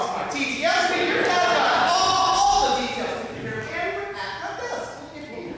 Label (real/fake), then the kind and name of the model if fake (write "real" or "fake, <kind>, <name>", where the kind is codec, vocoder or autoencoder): real